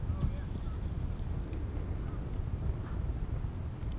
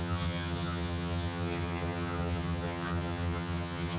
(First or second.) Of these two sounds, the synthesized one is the second